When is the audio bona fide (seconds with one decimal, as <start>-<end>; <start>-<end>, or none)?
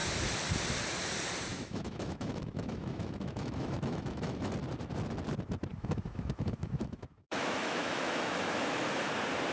0.0-1.5; 4.5-5.7; 9.1-9.5